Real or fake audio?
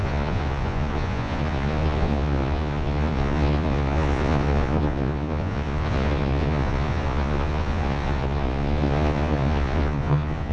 fake